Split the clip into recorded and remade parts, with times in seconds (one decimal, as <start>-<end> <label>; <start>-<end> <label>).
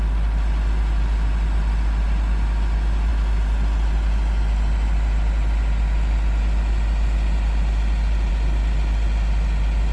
0.0-9.9 recorded